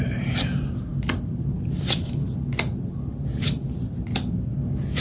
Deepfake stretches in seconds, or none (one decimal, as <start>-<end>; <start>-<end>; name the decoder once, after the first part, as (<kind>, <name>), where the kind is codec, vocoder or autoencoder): 0.9-3.9 (vocoder, BigVGAN v2)